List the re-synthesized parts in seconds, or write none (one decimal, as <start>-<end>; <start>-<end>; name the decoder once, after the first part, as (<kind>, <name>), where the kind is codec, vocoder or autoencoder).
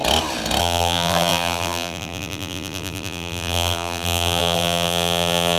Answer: 0.6-5.6 (vocoder, BigVGAN v2)